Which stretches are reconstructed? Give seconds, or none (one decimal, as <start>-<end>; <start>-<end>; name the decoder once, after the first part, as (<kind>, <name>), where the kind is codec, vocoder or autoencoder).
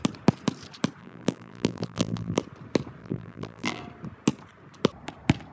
1.0-2.4 (vocoder, BigVGAN v2); 3.0-3.8